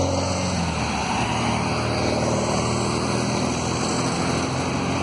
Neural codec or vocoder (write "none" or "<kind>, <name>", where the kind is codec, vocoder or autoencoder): none